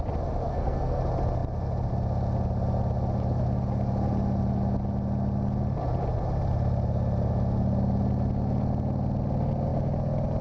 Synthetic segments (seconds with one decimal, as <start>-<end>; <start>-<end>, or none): 0.4-1.0